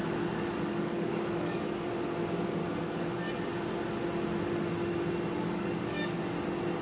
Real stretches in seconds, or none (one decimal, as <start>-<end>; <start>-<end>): 0.0-0.7; 1.9-2.6; 3.3-5.4; 6.2-6.8